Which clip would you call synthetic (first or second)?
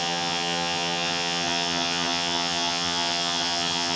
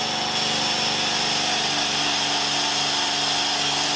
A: first